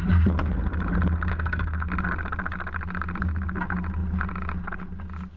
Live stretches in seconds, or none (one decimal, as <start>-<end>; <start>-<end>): 0.0-1.3; 1.9-5.4